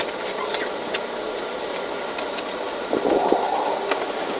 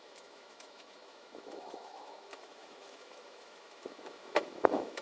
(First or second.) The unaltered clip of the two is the first